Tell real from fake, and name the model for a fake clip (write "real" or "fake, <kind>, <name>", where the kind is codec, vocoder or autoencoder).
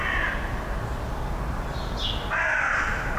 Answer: real